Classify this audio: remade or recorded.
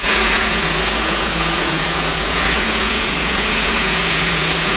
remade